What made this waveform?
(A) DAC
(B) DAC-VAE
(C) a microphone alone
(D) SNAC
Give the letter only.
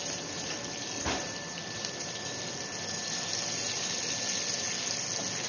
C